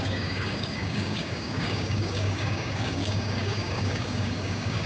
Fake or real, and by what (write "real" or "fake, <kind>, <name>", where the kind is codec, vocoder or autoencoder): fake, codec, DAC